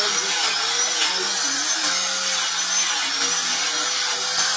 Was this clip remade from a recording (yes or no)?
no